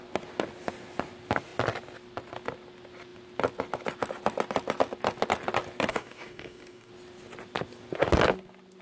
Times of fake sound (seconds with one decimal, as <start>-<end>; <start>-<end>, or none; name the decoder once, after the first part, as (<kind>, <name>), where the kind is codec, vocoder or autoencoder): 5.9-6.9 (codec, DAC)